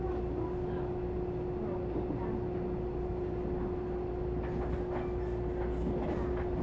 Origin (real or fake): real